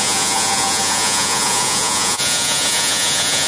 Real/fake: fake